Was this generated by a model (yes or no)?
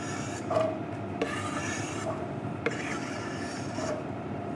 yes